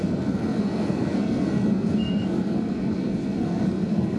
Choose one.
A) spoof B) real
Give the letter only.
A